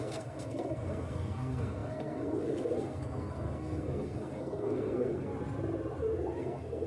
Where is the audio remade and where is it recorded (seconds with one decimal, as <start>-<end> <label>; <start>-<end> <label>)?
0.0-5.3 remade; 5.3-6.4 recorded; 6.4-6.9 remade